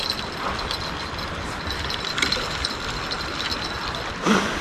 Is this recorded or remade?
recorded